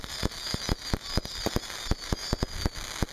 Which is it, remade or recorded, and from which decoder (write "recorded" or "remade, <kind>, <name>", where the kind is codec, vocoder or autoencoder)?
recorded